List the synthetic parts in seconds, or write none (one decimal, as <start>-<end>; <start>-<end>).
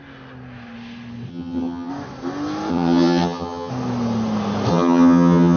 1.3-1.9; 2.7-3.7; 4.7-5.6